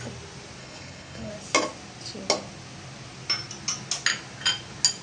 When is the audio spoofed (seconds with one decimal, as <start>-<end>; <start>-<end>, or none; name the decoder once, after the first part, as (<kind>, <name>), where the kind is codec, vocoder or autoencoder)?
0.6-1.3 (codec, HILCodec)